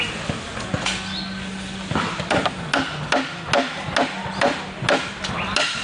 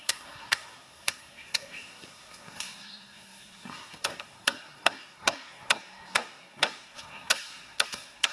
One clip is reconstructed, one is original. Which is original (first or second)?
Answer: first